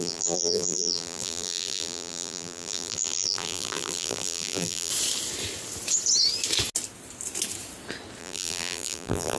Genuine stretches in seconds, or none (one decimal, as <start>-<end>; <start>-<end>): 4.9-8.2